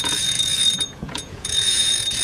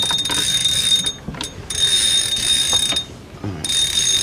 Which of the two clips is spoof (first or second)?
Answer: first